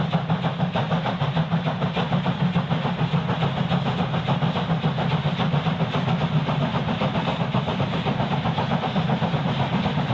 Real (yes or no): yes